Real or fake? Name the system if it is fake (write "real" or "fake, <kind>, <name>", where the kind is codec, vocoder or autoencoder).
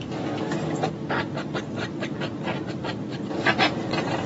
real